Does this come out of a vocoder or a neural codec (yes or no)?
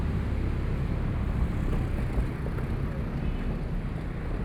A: no